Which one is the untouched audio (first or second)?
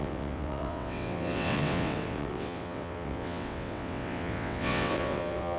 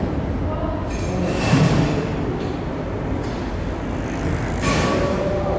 second